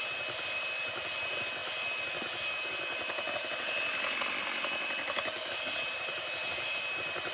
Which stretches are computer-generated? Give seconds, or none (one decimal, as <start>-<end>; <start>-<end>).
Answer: none